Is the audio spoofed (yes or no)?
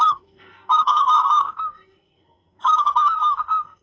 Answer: yes